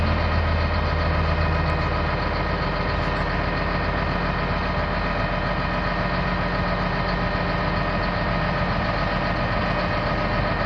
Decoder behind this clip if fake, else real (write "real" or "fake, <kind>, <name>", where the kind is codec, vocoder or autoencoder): real